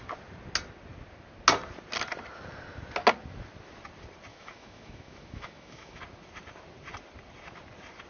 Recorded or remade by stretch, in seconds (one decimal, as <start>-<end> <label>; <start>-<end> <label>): 0.0-4.3 recorded; 4.3-6.0 remade; 6.0-8.1 recorded